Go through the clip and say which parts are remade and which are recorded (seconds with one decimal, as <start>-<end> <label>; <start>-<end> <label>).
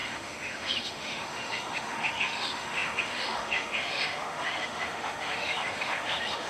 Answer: 0.0-6.5 remade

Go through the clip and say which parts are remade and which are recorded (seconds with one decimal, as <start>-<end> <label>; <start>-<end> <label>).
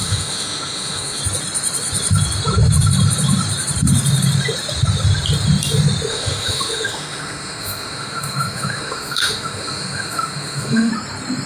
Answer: 0.0-1.2 remade; 1.2-6.1 recorded; 6.1-10.9 remade; 10.9-11.5 recorded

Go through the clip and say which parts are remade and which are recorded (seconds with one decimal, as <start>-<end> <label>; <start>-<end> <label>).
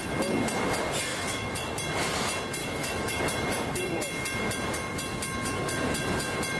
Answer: 0.0-1.1 recorded; 1.1-1.7 remade; 1.7-2.6 recorded; 2.6-3.2 remade; 3.2-6.6 recorded